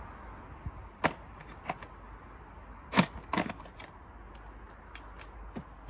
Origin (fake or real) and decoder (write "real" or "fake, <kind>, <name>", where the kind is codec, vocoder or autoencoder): real